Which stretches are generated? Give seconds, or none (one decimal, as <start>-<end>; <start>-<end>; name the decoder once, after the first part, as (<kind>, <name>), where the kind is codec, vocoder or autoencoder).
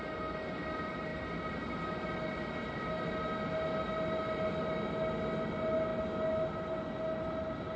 none